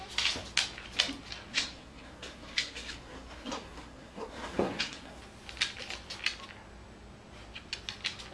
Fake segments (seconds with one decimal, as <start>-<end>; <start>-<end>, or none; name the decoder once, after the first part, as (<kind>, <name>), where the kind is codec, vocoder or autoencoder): 1.5-5.2 (codec, SNAC)